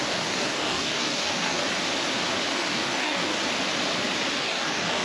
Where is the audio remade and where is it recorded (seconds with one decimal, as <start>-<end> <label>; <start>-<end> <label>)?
0.0-1.6 remade; 1.6-2.5 recorded; 2.5-3.4 remade; 3.4-4.3 recorded; 4.3-5.0 remade